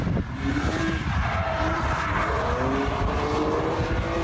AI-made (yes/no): no